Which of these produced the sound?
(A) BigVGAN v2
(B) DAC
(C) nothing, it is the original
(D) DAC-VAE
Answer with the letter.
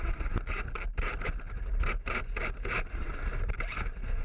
A